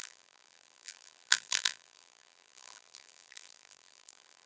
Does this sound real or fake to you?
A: fake